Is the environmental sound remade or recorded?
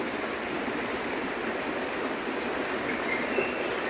recorded